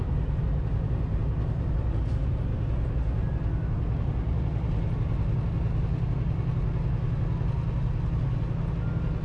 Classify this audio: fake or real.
real